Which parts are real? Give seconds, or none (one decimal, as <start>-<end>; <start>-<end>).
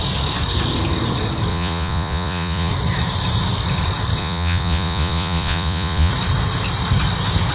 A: 0.0-1.5; 2.7-4.2; 6.1-7.5